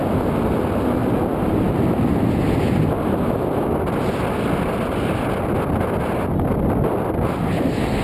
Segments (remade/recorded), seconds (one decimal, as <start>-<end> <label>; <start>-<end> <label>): 0.0-8.0 recorded